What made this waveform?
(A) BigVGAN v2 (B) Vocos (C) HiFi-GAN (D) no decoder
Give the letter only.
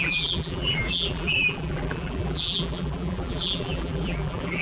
A